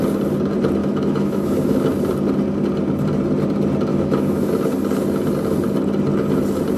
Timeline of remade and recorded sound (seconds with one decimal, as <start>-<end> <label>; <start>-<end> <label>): 0.0-0.8 recorded; 0.8-1.8 remade; 1.8-3.9 recorded; 3.9-4.5 remade; 4.5-6.8 recorded